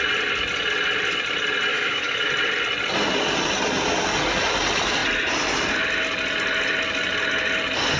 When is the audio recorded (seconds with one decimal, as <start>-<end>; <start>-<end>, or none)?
0.0-1.7; 2.3-8.0